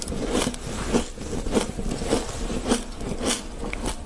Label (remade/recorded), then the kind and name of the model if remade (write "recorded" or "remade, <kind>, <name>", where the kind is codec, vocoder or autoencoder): recorded